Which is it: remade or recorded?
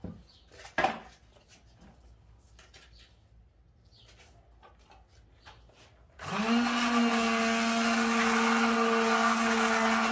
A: recorded